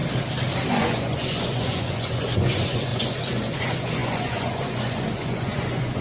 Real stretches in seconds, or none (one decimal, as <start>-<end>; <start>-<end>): 0.0-0.7